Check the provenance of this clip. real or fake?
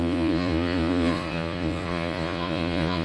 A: fake